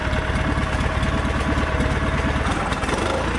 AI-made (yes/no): no